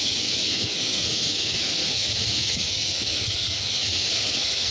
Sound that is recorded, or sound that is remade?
remade